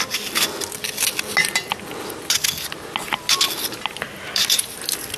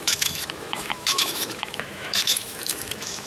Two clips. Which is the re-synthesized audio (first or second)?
second